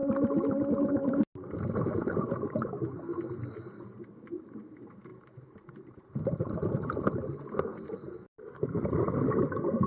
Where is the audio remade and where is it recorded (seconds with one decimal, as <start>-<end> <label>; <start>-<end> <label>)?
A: 0.0-5.1 recorded; 5.1-6.5 remade; 6.5-9.9 recorded